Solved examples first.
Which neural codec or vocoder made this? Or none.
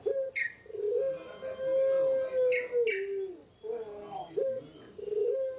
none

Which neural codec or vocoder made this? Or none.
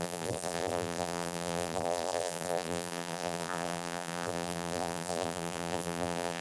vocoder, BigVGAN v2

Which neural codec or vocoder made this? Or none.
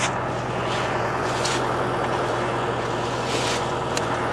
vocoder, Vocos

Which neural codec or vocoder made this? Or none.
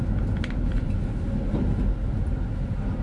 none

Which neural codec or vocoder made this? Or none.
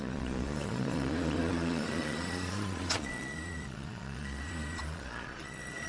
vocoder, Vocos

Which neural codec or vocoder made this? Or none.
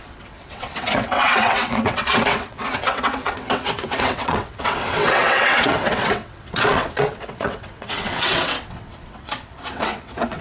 vocoder, WaveNeXt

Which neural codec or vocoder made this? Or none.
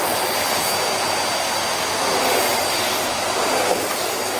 none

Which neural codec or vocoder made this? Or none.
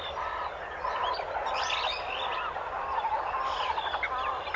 none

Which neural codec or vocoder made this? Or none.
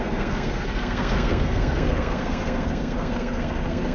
codec, SNAC